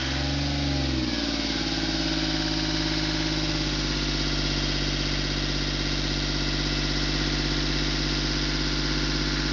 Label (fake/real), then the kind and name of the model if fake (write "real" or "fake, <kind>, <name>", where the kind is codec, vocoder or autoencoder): real